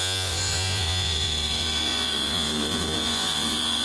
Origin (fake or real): fake